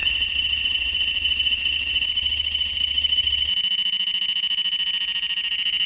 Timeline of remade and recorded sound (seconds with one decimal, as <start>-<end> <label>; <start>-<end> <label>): 0.0-3.5 remade; 3.5-5.9 recorded